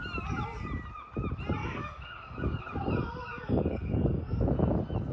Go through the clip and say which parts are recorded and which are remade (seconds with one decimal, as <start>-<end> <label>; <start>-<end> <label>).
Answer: 0.0-1.6 recorded; 1.6-2.6 remade; 2.6-3.3 recorded; 3.3-4.4 remade; 4.4-5.1 recorded